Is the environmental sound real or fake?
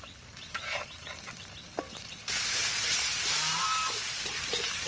real